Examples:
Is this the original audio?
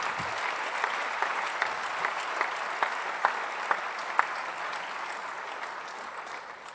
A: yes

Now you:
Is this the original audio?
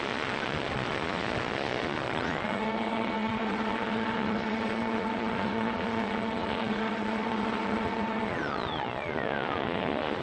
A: no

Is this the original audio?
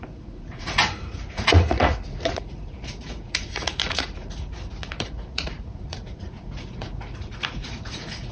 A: no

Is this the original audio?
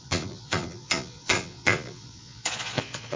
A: no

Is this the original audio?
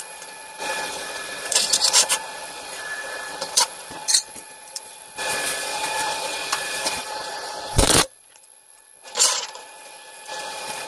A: no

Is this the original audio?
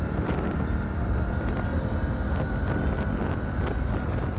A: yes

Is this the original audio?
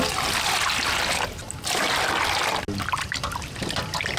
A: yes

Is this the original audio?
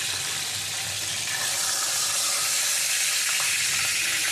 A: yes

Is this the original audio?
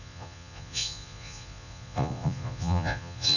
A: no